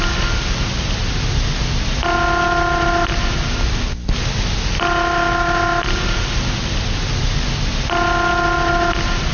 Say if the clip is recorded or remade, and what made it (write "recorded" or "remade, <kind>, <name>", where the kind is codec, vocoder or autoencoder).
recorded